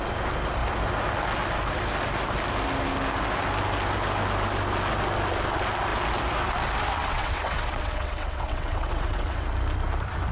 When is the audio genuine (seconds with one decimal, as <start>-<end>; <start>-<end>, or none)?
0.0-7.0; 9.4-10.3